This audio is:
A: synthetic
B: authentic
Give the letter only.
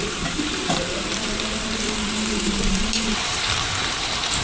A